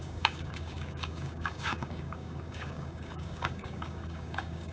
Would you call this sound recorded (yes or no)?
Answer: no